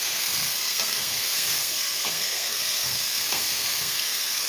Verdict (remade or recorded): remade